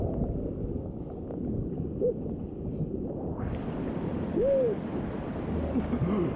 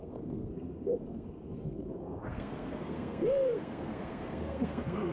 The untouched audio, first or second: first